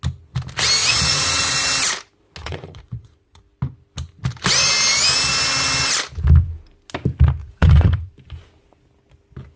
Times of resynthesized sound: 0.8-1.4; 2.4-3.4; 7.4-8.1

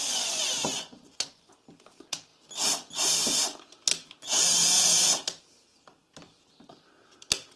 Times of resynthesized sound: 0.0-1.5

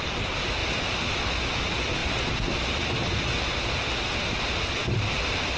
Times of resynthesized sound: none

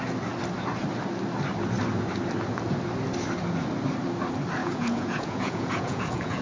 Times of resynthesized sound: 4.6-6.4